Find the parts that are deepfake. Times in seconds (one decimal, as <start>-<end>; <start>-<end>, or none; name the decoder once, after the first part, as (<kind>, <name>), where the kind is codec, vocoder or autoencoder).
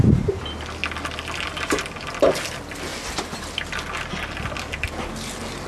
none